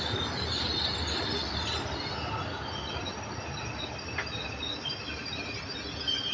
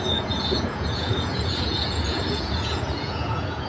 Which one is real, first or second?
first